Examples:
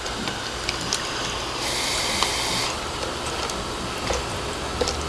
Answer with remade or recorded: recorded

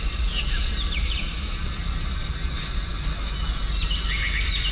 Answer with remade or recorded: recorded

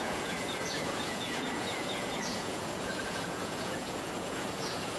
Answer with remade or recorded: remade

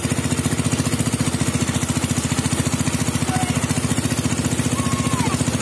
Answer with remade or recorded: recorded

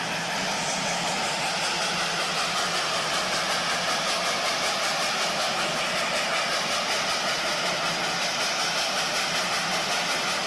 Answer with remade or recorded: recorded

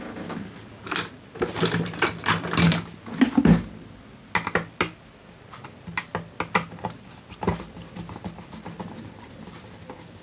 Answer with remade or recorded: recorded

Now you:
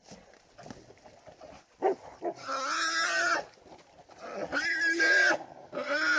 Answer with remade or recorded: recorded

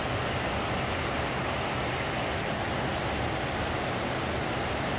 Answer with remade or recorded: recorded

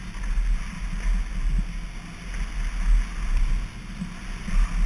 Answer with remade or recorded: recorded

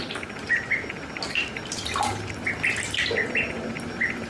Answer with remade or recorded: recorded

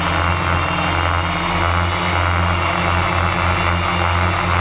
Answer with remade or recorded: recorded